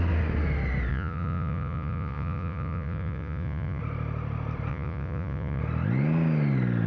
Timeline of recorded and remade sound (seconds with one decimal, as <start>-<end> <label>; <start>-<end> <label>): 0.0-0.9 recorded; 0.9-3.8 remade; 3.8-4.7 recorded; 4.7-5.6 remade; 5.6-6.9 recorded